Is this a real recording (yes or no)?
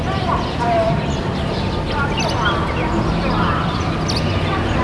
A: yes